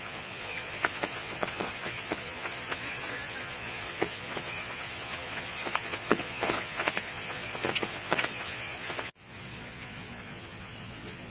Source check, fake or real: fake